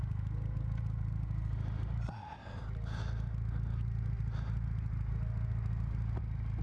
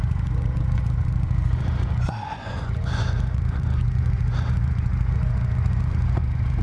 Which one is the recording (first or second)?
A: first